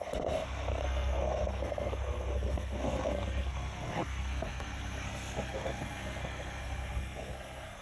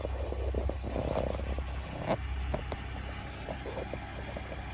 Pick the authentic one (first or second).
second